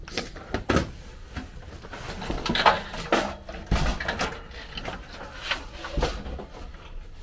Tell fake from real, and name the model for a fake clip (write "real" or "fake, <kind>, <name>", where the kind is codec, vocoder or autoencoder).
real